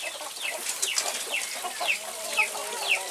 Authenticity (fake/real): real